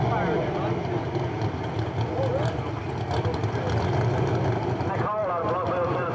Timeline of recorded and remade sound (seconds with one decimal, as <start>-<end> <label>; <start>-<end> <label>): 0.0-2.3 recorded; 2.3-3.9 remade; 3.9-6.1 recorded